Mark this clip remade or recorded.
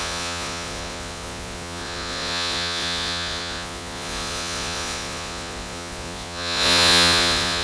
remade